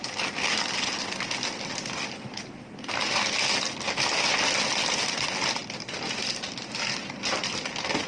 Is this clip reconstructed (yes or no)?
no